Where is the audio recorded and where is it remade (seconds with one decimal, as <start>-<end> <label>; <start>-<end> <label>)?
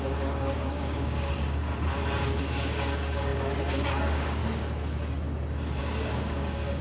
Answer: 0.0-1.7 remade; 1.7-2.4 recorded; 2.4-4.4 remade; 4.4-5.8 recorded; 5.8-6.8 remade